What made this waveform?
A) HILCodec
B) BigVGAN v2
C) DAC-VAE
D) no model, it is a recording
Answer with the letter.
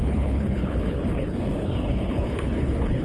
A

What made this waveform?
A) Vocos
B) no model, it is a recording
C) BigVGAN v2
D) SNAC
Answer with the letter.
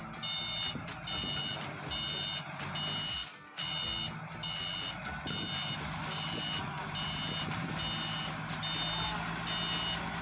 B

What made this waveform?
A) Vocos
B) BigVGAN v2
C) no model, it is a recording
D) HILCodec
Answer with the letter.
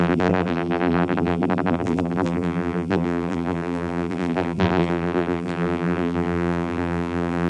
B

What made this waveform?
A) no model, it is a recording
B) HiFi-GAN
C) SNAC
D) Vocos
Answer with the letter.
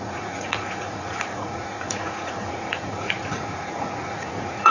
D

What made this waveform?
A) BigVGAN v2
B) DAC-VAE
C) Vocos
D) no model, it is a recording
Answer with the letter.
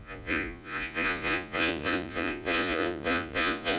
C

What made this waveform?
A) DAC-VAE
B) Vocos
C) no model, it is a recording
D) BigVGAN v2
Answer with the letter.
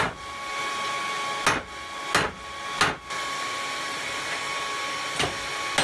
C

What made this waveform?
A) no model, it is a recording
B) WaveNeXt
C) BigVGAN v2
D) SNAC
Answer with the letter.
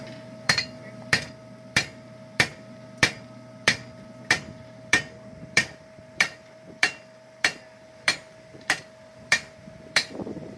C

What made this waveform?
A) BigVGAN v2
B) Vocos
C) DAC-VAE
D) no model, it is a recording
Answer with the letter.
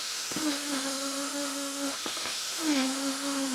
C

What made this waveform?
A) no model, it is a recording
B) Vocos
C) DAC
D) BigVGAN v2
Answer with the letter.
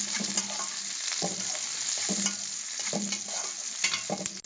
A